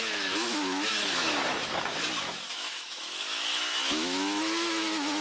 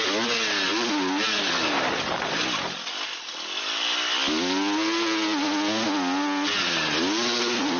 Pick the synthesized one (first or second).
first